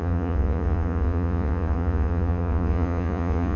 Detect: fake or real fake